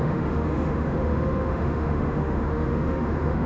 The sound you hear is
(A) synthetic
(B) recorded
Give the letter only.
A